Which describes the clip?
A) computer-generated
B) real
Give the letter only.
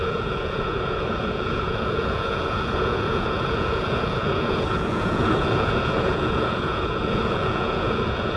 A